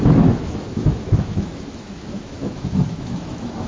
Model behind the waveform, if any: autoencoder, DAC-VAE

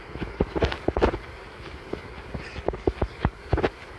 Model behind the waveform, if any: codec, DAC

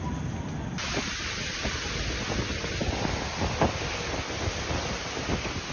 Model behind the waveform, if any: none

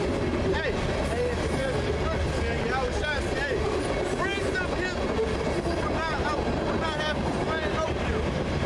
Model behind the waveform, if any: none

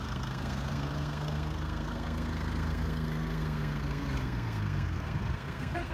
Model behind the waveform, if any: codec, SNAC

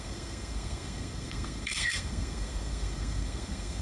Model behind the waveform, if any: codec, SNAC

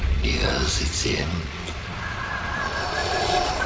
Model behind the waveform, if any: vocoder, Vocos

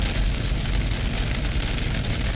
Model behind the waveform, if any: none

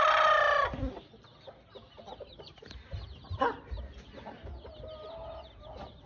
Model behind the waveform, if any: none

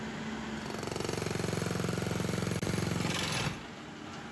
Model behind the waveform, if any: none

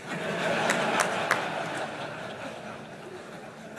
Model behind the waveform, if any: none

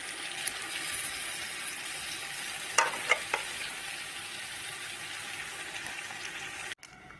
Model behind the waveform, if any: none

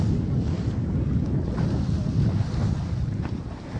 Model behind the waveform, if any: none